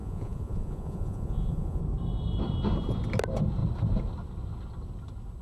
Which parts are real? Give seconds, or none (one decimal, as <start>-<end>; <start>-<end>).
1.8-5.4